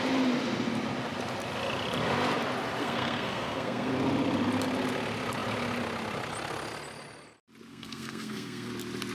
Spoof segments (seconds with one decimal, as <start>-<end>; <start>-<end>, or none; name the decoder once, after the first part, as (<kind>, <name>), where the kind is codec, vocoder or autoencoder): 2.8-3.9 (codec, SNAC); 7.7-8.7